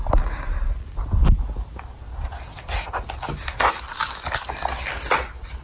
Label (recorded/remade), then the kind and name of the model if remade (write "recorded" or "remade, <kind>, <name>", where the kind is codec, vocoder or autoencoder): recorded